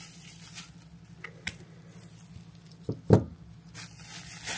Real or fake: real